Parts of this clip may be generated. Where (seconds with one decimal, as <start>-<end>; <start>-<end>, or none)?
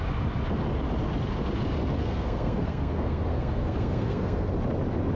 2.0-4.5